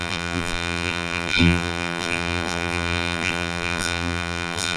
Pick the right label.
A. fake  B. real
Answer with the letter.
A